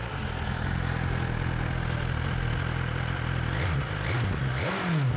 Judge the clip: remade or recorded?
recorded